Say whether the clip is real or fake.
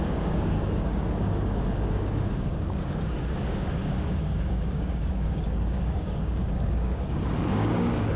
fake